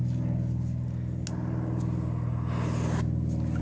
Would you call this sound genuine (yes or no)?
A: yes